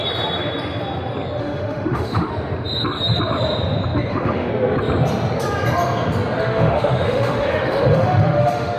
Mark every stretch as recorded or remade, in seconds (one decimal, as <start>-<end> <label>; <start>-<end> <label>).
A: 0.0-1.4 recorded; 1.4-2.3 remade; 2.3-4.1 recorded; 4.1-4.5 remade; 4.5-6.4 recorded; 6.4-8.8 remade